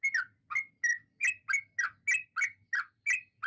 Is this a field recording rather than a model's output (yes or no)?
yes